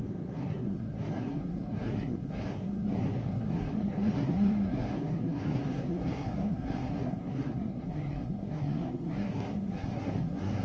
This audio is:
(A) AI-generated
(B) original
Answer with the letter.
A